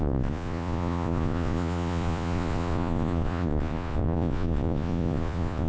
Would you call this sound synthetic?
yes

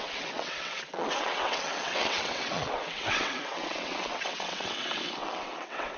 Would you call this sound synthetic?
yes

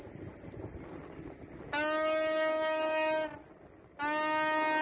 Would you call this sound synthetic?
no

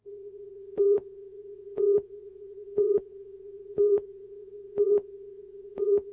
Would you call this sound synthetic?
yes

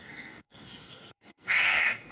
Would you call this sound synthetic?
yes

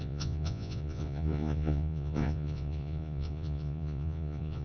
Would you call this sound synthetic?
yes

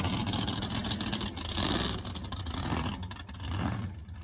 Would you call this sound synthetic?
no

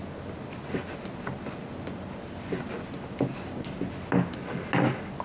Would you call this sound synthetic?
no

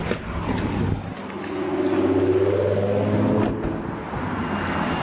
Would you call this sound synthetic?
no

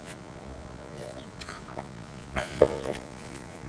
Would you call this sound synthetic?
yes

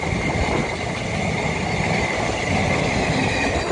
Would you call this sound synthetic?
no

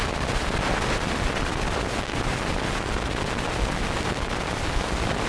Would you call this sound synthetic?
no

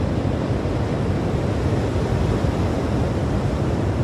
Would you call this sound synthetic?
no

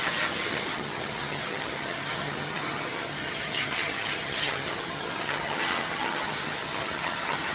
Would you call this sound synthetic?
yes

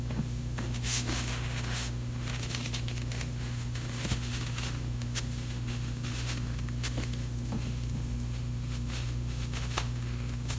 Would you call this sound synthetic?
yes